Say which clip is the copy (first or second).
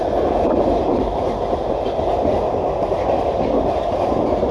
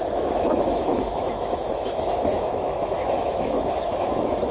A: second